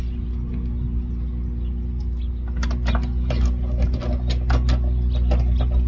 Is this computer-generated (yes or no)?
no